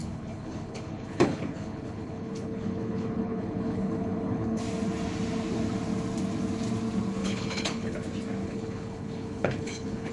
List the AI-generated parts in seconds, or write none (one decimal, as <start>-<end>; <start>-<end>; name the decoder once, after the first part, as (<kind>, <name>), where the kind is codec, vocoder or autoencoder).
0.0-4.6 (codec, HILCodec); 7.2-8.0; 8.4-10.1